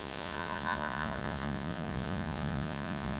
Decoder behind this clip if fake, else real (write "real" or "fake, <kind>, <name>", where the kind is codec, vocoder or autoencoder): fake, vocoder, Vocos